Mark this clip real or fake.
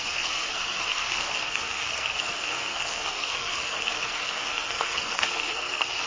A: fake